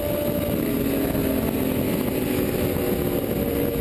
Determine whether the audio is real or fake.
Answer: real